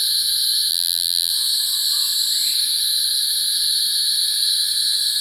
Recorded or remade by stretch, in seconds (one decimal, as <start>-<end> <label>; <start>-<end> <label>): 0.0-0.7 recorded; 0.7-1.3 remade; 1.3-5.2 recorded